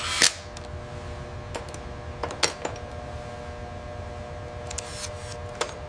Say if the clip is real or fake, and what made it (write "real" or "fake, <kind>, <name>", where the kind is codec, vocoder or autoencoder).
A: real